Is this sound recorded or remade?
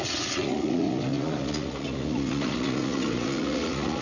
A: remade